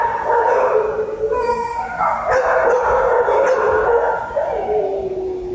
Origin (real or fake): real